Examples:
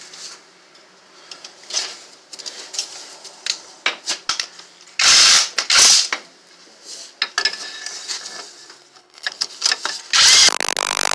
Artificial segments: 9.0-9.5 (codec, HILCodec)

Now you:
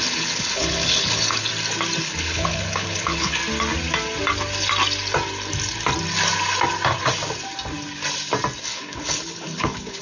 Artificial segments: 0.0-1.5 (codec, HILCodec); 2.0-3.4; 8.6-10.0

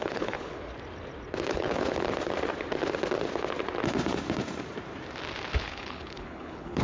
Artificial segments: 0.0-0.7 (codec, HILCodec); 1.5-1.9; 5.6-6.8

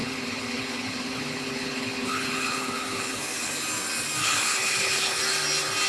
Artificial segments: 0.0-3.5 (codec, HILCodec); 4.2-5.2

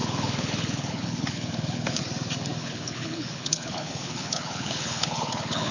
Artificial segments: 0.0-2.0 (codec, HILCodec); 2.6-5.7